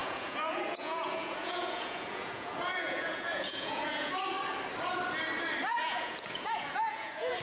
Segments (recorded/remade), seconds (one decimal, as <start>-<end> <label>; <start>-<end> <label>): 0.0-4.1 remade; 4.1-5.7 recorded; 5.7-7.4 remade